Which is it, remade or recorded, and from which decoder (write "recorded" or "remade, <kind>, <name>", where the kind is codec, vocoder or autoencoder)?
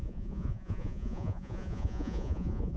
remade, vocoder, Vocos